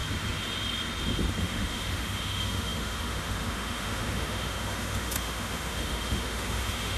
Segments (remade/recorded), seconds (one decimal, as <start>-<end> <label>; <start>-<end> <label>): 0.0-1.4 recorded; 1.4-7.0 remade